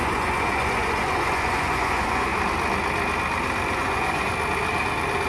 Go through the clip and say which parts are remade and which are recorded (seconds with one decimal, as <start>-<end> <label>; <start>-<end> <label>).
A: 0.0-2.3 remade; 2.3-3.7 recorded; 3.7-4.3 remade; 4.3-5.3 recorded